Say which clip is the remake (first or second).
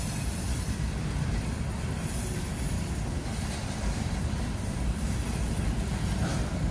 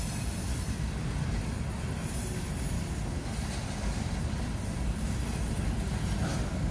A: first